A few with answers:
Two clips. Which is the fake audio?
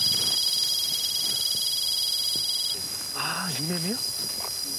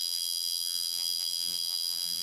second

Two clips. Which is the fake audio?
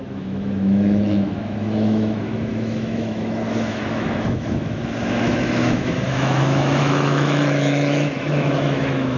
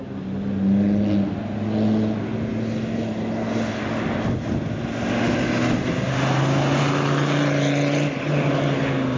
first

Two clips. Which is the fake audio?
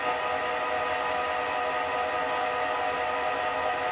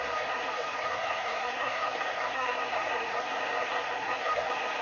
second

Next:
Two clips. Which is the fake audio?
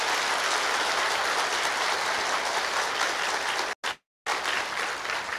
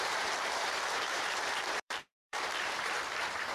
second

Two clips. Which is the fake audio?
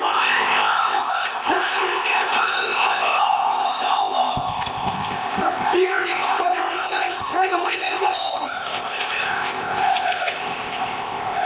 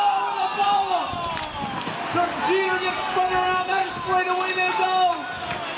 first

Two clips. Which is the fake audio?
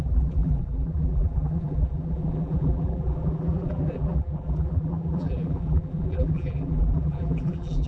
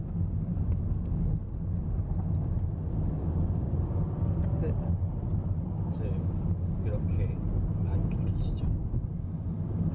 first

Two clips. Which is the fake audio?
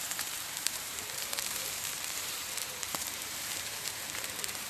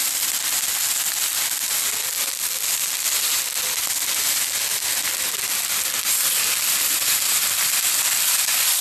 first